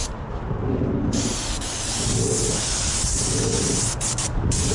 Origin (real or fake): real